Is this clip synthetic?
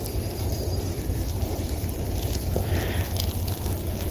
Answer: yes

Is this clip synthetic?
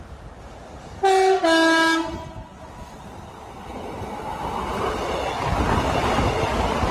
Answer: no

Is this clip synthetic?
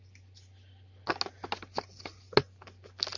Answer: no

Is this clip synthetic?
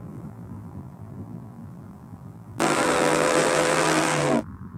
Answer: yes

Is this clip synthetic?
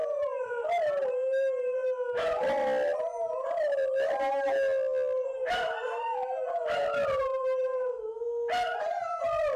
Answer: no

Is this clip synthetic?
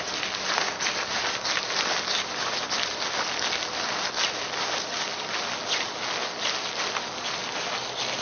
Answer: no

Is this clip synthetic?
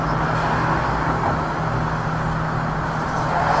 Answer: no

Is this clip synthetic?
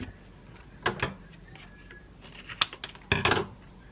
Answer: no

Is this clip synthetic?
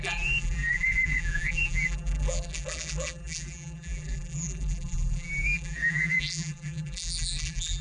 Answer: yes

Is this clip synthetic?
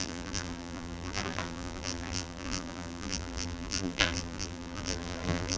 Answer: yes